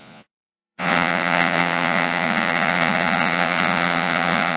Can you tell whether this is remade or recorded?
remade